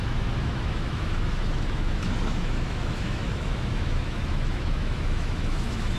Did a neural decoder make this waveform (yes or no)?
yes